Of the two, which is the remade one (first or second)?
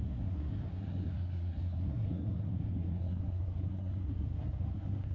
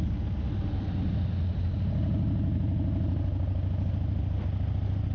first